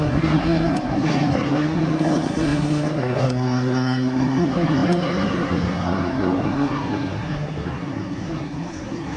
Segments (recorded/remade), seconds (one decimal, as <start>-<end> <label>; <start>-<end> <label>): 0.0-9.2 remade